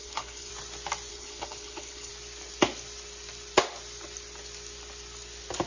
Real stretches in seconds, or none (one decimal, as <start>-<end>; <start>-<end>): 0.5-1.1; 2.1-5.7